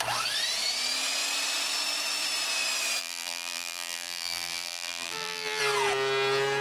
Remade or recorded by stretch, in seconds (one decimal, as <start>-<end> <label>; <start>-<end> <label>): 0.0-3.0 recorded; 3.0-5.6 remade; 5.6-6.6 recorded